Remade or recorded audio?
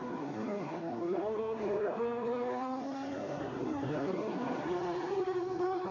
remade